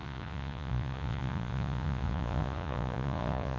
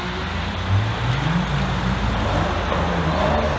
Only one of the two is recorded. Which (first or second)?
second